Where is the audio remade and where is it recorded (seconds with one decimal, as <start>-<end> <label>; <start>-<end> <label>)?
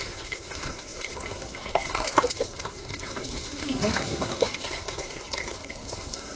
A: 0.0-6.4 remade